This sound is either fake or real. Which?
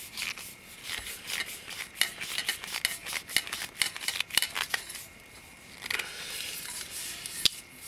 real